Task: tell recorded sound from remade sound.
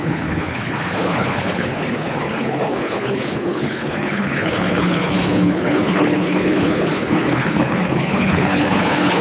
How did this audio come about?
remade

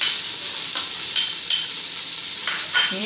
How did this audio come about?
remade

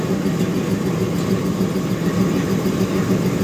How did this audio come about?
recorded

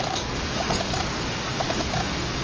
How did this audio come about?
remade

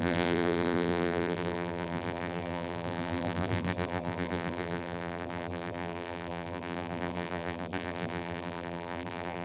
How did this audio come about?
remade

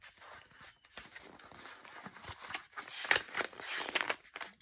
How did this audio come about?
remade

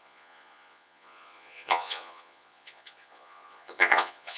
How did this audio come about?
remade